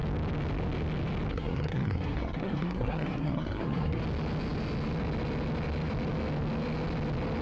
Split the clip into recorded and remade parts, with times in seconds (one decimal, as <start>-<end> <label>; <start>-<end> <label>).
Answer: 0.0-1.3 recorded; 1.3-4.0 remade; 4.0-7.4 recorded